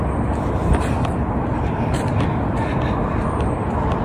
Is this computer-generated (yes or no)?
no